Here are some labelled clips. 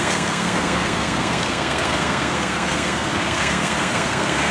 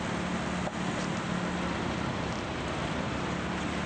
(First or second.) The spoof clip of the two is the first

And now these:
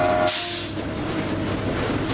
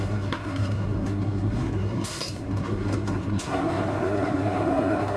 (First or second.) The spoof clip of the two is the second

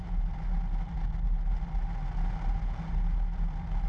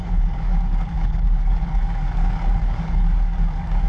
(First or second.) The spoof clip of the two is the second